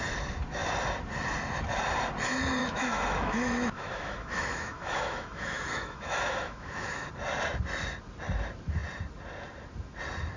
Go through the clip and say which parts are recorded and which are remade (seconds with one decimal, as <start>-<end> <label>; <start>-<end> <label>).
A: 0.0-2.6 recorded; 2.6-7.1 remade; 7.1-10.4 recorded